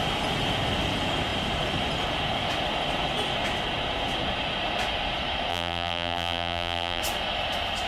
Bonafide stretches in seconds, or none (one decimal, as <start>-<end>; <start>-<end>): 0.0-5.5; 7.0-7.9